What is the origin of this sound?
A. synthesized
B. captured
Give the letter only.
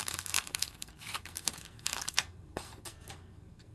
A